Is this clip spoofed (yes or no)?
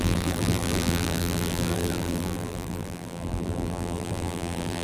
yes